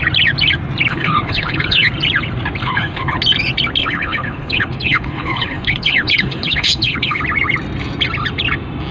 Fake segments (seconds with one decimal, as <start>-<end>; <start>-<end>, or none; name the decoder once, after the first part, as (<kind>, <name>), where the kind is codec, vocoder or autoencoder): 0.9-1.9 (codec, HILCodec); 2.6-3.2; 3.8-7.2